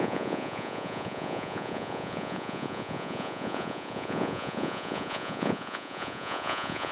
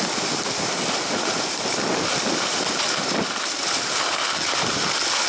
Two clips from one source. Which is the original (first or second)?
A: second